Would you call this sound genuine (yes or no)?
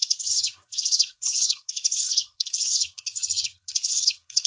no